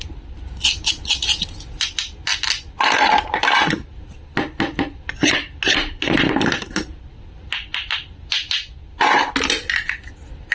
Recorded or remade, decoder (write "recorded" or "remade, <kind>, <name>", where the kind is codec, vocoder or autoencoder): recorded